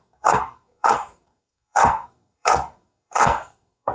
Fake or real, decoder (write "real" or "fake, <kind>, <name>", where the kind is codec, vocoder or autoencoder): fake, codec, SNAC